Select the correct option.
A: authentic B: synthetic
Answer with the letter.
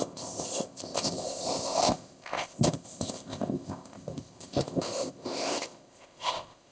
B